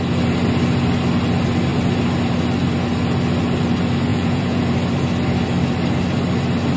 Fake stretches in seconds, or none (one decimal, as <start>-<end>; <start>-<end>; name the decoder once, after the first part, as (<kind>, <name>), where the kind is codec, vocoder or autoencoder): 4.1-4.7 (vocoder, Vocos)